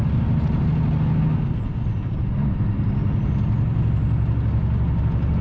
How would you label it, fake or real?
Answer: real